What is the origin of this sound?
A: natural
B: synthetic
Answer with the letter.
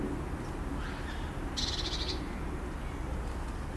A